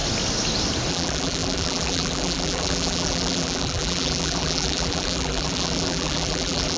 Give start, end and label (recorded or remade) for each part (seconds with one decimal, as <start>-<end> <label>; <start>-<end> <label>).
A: 0.0-0.9 recorded; 0.9-6.8 remade